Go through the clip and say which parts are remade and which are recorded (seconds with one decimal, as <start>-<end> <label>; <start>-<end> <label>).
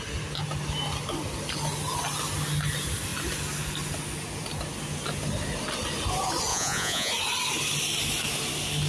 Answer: 0.0-6.5 recorded; 6.5-7.1 remade; 7.1-8.9 recorded